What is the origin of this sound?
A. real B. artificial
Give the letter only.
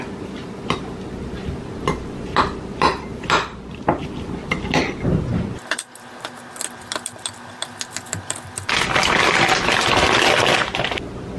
B